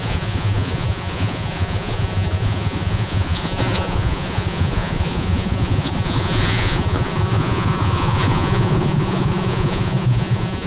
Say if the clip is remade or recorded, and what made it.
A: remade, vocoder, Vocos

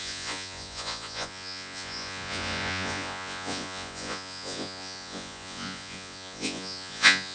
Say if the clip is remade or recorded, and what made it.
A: remade, vocoder, Vocos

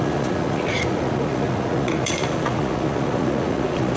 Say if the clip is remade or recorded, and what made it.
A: remade, vocoder, Vocos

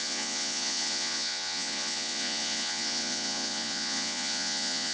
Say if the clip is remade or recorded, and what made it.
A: remade, vocoder, Vocos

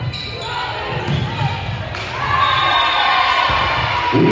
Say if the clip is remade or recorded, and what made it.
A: recorded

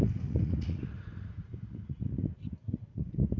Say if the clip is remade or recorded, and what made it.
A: remade, vocoder, Vocos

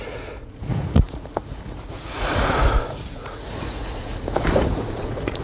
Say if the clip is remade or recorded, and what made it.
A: remade, vocoder, Vocos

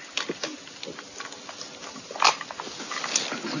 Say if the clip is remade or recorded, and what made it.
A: recorded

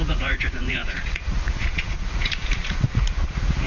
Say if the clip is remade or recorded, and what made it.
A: remade, vocoder, Vocos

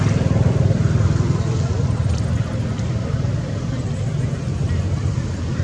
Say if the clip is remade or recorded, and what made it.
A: recorded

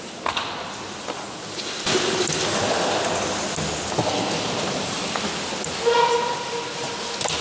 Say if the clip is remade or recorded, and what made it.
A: recorded